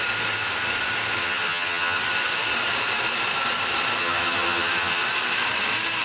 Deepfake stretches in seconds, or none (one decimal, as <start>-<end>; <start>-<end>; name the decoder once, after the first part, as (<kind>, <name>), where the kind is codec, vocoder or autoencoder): 1.2-2.0 (vocoder, HiFi-GAN); 4.0-5.0